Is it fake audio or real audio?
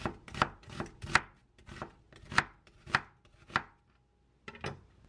real